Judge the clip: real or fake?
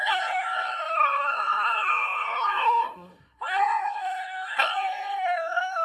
fake